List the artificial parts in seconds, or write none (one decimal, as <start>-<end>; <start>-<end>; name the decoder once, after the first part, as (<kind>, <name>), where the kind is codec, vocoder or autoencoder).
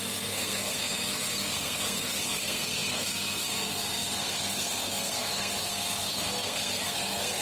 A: 0.0-7.4 (codec, SNAC)